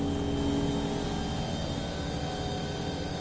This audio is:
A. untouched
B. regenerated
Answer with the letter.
A